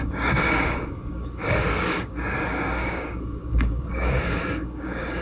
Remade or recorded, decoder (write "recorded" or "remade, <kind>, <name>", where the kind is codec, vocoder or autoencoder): remade, codec, DAC